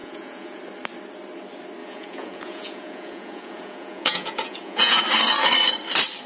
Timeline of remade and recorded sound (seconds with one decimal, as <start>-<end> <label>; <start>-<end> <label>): 0.0-0.6 remade; 0.6-1.8 recorded; 1.8-5.0 remade; 5.0-6.3 recorded

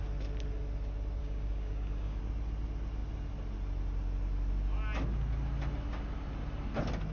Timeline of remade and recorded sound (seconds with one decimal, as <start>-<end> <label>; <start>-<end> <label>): 0.0-1.2 recorded; 1.2-2.2 remade; 2.2-7.1 recorded